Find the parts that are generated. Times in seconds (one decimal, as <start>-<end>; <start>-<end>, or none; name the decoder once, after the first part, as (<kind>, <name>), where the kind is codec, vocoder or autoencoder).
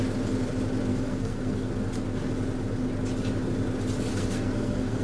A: 0.9-1.7 (codec, SNAC); 4.1-5.0